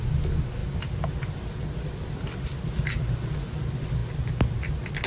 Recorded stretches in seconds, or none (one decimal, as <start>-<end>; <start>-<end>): 0.0-5.1